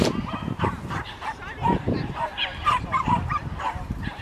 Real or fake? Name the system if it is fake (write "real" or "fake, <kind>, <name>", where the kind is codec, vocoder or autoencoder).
fake, vocoder, BigVGAN v2